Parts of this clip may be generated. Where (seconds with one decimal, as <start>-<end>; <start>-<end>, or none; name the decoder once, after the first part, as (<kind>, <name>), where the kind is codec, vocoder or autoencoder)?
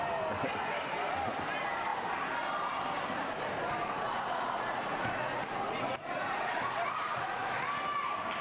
3.8-7.6 (vocoder, Vocos)